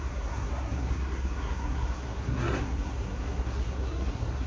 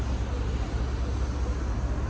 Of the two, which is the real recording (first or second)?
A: second